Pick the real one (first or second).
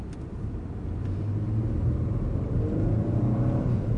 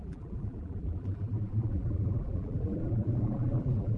first